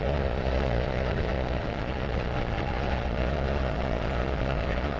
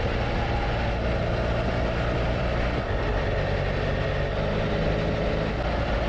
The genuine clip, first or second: second